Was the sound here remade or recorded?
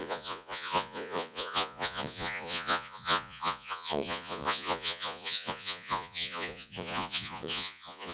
remade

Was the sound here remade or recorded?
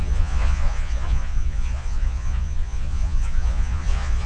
remade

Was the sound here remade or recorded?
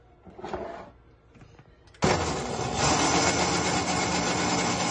recorded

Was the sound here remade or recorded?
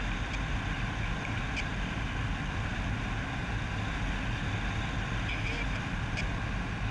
recorded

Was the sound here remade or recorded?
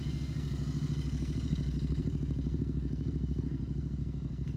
remade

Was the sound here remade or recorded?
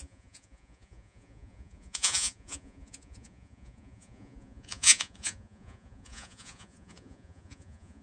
remade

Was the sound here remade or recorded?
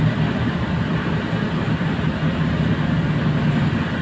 recorded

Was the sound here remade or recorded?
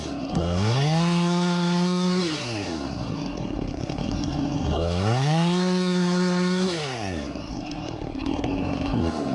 remade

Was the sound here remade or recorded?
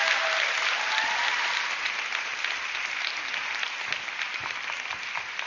recorded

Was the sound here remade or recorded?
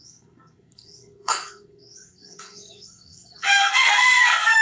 remade